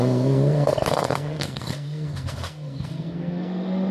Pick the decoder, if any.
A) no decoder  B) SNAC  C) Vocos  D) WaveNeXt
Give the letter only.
B